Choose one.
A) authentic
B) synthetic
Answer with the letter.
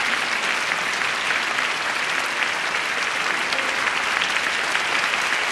A